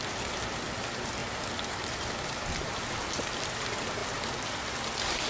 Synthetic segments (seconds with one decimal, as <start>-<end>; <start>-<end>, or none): none